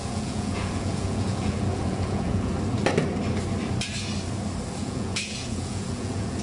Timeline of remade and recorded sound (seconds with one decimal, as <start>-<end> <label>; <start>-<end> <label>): 0.0-2.5 remade; 2.5-4.8 recorded; 4.8-6.4 remade